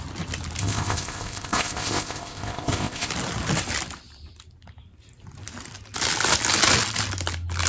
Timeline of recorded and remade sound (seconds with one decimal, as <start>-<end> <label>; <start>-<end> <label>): 0.0-0.6 recorded; 0.6-3.1 remade; 3.1-7.7 recorded